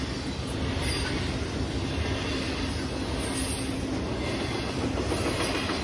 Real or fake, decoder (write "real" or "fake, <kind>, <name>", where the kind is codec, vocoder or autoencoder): real